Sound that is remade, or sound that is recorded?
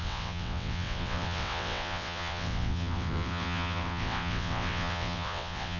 remade